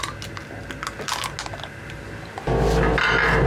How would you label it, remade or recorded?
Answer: recorded